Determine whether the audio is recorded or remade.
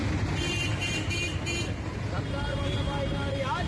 recorded